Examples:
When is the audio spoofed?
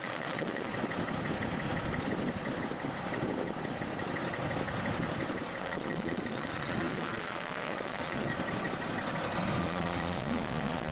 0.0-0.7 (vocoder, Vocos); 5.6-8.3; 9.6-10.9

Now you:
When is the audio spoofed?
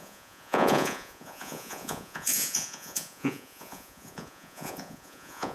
0.0-5.5 (vocoder, Vocos)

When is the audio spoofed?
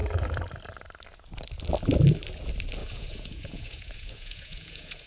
2.8-5.1 (vocoder, Vocos)